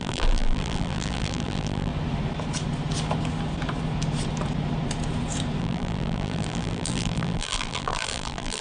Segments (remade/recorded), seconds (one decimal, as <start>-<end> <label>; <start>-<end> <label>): 0.0-1.9 remade; 1.9-5.6 recorded; 5.6-8.6 remade